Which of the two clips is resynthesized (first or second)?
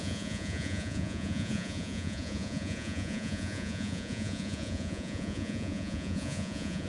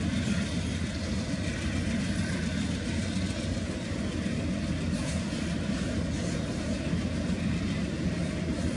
first